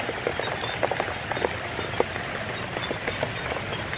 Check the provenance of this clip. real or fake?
real